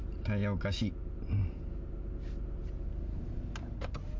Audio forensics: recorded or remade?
recorded